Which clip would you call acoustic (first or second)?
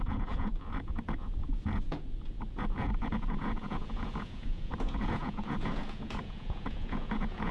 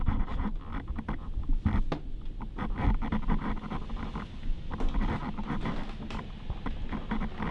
second